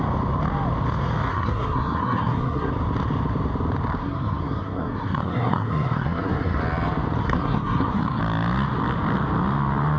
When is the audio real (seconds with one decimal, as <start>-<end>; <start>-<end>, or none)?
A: 0.0-1.3; 2.7-4.0; 6.6-7.2; 8.2-10.0